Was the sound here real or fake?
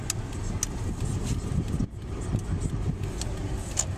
real